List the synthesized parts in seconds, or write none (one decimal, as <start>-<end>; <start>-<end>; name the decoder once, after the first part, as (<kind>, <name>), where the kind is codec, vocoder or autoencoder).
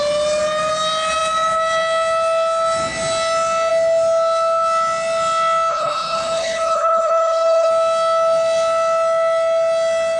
5.7-7.7 (codec, HILCodec)